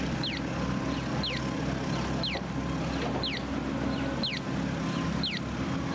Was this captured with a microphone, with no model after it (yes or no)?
yes